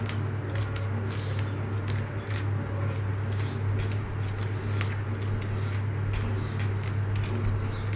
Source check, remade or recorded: recorded